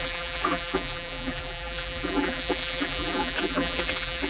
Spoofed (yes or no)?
yes